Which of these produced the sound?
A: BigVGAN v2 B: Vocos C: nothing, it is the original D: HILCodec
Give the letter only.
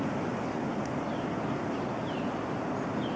C